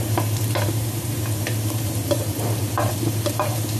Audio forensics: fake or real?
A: fake